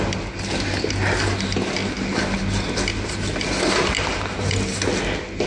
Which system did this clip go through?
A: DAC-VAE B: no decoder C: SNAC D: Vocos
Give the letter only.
B